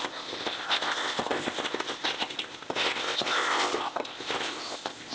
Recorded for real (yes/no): no